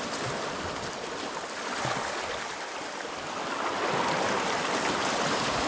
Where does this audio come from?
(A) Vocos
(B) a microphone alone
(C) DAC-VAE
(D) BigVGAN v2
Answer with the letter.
B